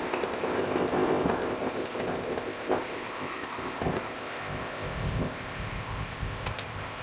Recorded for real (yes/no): no